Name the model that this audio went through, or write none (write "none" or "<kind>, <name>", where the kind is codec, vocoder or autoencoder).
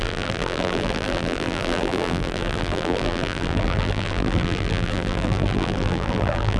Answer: vocoder, BigVGAN v2